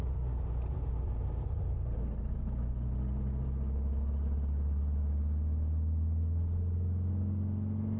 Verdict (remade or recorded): recorded